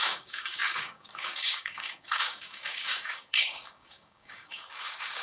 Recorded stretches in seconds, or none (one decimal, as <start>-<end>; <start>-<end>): none